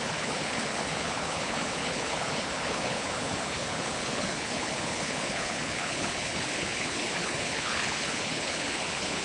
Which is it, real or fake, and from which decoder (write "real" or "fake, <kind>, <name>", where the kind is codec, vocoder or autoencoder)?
fake, codec, HILCodec